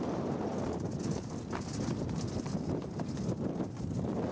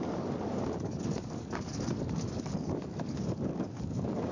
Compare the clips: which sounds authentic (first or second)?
first